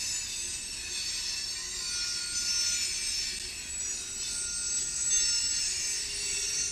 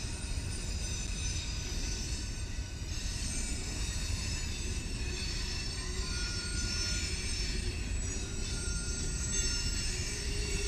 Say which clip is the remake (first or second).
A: second